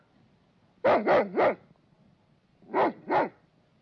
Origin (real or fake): real